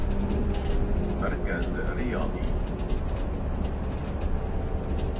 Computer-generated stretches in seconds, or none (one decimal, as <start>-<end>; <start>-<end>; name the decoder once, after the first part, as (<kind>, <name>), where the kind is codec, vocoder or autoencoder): none

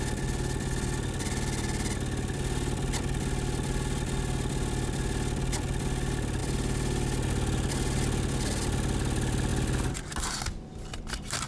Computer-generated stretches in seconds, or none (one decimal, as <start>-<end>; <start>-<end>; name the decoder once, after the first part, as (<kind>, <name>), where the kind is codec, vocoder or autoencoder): none